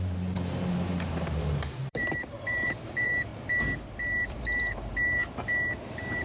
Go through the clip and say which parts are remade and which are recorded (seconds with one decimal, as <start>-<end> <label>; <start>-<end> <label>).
0.0-3.3 remade; 3.3-4.3 recorded; 4.3-5.2 remade; 5.2-6.2 recorded